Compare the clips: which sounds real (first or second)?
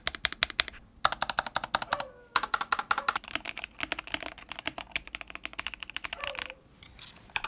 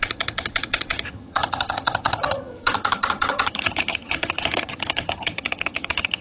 first